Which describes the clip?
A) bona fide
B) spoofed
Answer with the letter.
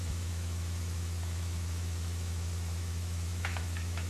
B